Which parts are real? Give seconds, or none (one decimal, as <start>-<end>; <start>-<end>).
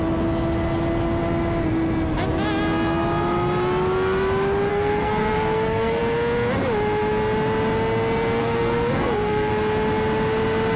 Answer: 0.0-4.7; 6.0-8.4; 9.5-10.8